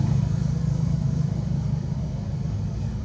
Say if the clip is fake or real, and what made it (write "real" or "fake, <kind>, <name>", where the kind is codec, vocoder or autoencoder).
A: fake, codec, DAC